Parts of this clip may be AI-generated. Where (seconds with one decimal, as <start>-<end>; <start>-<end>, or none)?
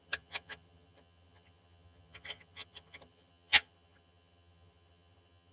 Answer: 0.0-5.5